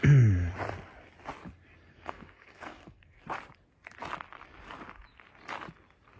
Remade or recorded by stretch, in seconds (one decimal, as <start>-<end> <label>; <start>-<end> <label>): 0.0-1.9 recorded; 1.9-3.2 remade; 3.2-6.2 recorded